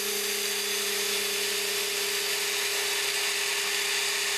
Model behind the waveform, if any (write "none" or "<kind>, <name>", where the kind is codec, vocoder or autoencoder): none